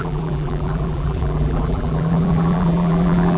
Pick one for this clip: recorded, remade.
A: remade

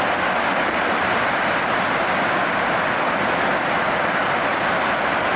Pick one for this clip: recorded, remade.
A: recorded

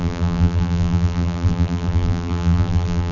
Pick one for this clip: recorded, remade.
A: remade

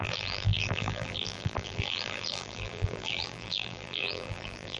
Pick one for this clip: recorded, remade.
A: remade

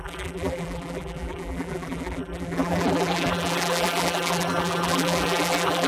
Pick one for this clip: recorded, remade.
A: remade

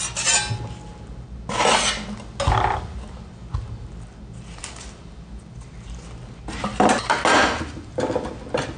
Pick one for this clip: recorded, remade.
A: recorded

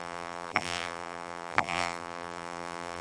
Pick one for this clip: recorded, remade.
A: remade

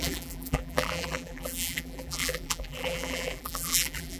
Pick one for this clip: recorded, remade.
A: remade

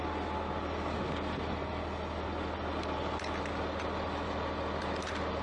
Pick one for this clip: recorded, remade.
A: recorded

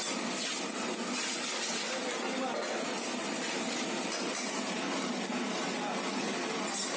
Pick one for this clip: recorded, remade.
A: recorded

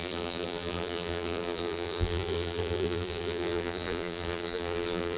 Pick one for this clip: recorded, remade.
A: remade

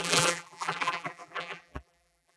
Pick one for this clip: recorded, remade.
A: remade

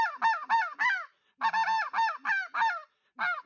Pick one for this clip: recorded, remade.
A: recorded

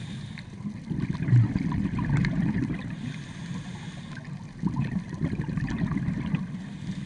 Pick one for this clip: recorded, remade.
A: remade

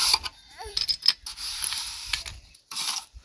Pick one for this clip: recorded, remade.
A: remade